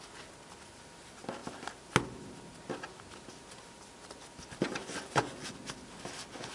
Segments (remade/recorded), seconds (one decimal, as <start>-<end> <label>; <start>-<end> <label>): 0.0-4.8 recorded; 4.8-5.6 remade; 5.6-6.5 recorded